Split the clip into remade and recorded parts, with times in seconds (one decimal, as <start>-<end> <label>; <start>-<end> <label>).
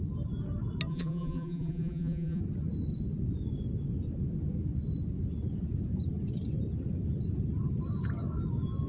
0.0-0.9 recorded; 0.9-2.4 remade; 2.4-8.9 recorded